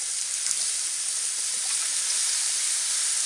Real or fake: real